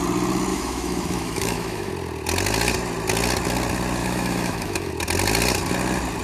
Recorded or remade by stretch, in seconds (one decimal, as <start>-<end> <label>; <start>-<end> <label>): 0.0-0.5 recorded; 0.5-1.9 remade; 1.9-4.0 recorded; 4.0-4.9 remade; 4.9-6.2 recorded